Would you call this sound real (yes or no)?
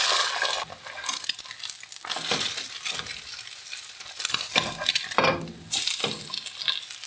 yes